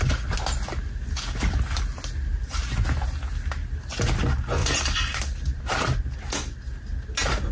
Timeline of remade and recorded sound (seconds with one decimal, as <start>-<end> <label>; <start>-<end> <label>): 0.0-4.6 recorded; 4.6-6.0 remade; 6.0-7.5 recorded